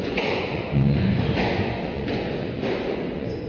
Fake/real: fake